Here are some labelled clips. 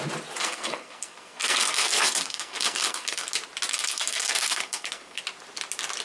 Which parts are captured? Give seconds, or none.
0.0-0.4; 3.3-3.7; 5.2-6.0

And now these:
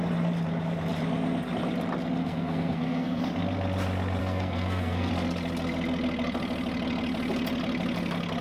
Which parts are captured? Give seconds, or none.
0.0-2.2; 3.2-4.2; 5.1-8.4

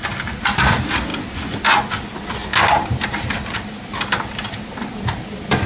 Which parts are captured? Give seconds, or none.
0.0-5.7